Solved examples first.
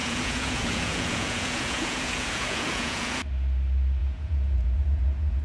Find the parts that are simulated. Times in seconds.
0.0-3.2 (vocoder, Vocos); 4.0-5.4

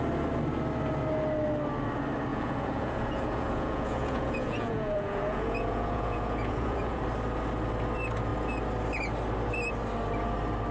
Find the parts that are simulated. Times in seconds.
2.3-7.0 (vocoder, Vocos)

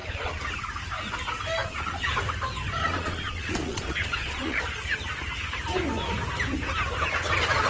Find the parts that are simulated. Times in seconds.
0.0-0.5 (vocoder, Vocos); 1.6-2.2; 2.8-4.6

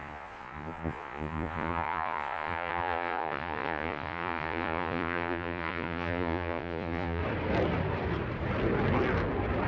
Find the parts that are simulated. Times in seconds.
0.0-7.2 (vocoder, Vocos)

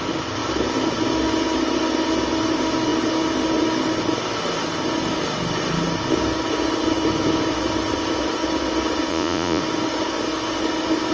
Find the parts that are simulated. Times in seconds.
9.1-9.6 (vocoder, Vocos)

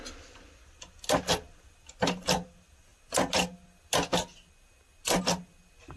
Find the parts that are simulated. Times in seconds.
none

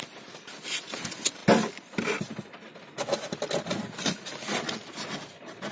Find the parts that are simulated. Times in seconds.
none

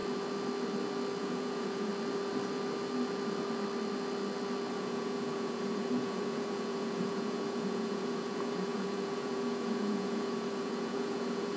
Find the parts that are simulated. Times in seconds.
1.2-1.9 (vocoder, Vocos); 4.7-11.6